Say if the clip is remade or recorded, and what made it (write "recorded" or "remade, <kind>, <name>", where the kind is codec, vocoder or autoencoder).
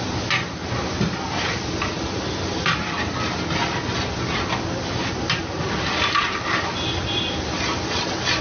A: recorded